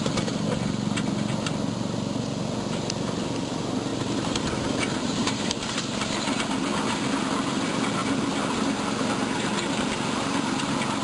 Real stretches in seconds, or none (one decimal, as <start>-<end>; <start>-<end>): 0.0-3.9; 5.7-11.0